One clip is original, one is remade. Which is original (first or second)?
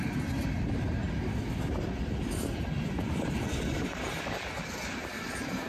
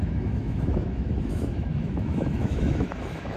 first